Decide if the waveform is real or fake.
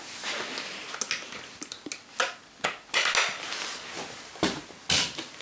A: real